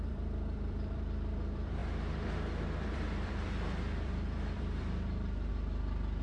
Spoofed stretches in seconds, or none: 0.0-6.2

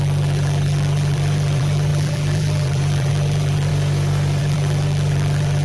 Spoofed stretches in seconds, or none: 0.0-3.7; 4.4-5.6

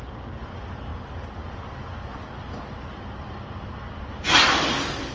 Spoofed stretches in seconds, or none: none

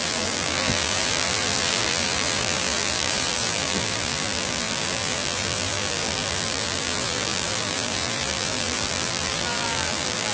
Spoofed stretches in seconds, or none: 0.0-10.3

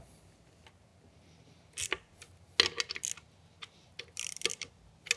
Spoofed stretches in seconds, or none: none

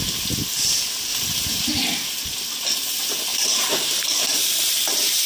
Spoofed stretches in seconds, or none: 1.1-1.7; 3.3-5.3